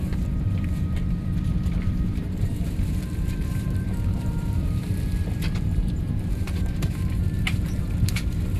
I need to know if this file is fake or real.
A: fake